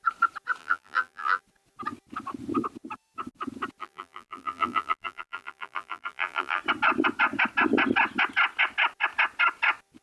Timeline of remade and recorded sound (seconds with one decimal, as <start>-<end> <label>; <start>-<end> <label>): 0.0-0.6 recorded; 0.6-1.4 remade; 1.4-3.8 recorded; 3.8-6.6 remade; 6.6-10.0 recorded